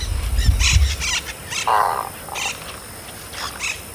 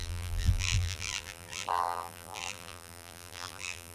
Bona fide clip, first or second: first